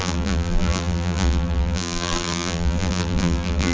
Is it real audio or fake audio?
fake